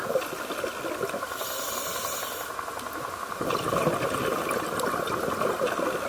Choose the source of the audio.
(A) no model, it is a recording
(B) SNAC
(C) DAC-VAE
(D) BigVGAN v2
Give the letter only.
A